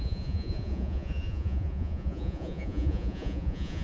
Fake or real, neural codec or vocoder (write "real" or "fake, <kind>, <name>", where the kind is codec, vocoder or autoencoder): fake, vocoder, Vocos